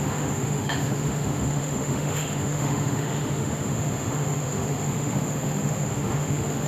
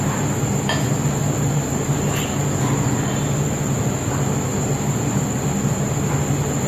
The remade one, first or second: first